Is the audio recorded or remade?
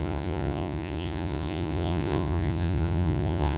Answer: remade